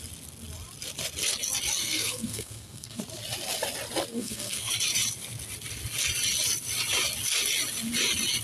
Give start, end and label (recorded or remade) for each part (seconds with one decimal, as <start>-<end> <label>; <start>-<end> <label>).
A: 0.0-1.8 recorded; 1.8-3.0 remade; 3.0-4.1 recorded; 4.1-4.7 remade; 4.7-8.4 recorded